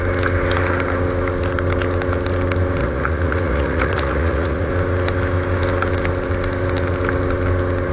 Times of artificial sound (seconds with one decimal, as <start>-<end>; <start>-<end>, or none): 2.8-4.7